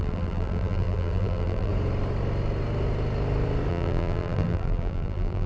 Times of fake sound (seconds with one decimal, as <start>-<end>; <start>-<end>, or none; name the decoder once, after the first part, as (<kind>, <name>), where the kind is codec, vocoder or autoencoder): 0.0-1.7 (vocoder, BigVGAN v2); 3.7-5.5